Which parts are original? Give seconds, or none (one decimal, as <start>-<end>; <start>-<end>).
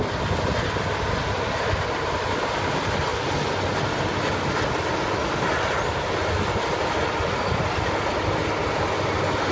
0.0-9.5